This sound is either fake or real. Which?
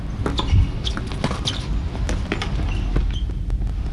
real